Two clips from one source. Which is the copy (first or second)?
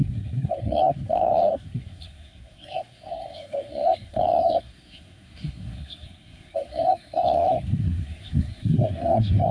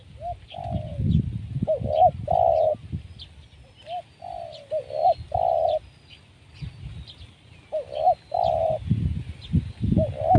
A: first